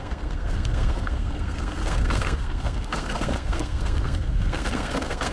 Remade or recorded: remade